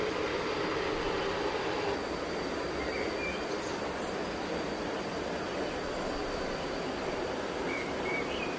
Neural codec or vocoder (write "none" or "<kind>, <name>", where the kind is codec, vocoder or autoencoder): none